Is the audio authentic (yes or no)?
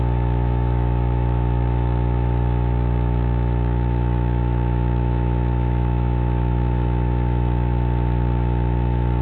no